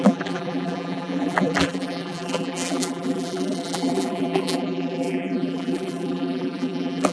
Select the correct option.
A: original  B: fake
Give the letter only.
B